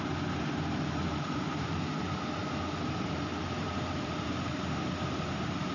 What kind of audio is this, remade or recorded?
remade